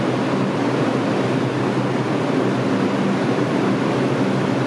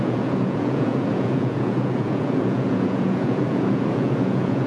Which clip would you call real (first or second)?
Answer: first